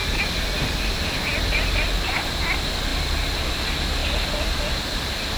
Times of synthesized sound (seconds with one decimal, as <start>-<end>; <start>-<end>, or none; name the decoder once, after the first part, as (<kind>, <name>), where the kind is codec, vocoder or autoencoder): none